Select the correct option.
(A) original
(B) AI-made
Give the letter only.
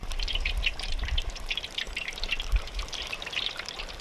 B